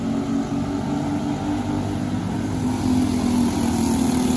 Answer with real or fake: real